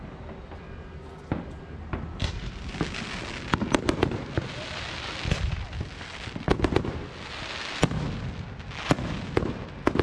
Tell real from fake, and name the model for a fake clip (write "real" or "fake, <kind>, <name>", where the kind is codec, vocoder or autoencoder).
real